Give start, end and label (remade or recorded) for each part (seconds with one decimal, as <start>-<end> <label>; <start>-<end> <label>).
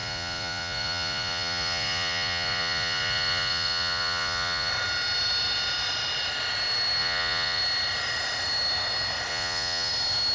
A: 0.0-4.7 remade; 4.7-7.0 recorded; 7.0-7.6 remade; 7.6-9.3 recorded; 9.3-9.9 remade; 9.9-10.3 recorded